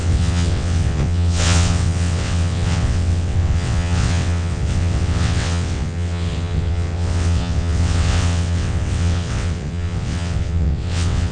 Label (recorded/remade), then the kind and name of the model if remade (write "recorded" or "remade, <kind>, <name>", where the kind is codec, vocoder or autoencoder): remade, vocoder, WaveNeXt